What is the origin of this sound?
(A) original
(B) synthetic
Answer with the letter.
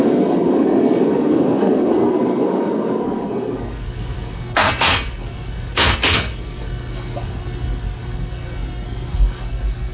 B